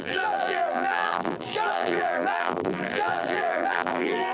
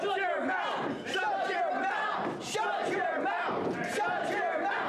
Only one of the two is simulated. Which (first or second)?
first